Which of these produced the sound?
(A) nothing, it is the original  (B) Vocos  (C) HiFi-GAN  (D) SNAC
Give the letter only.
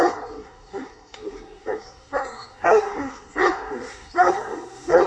D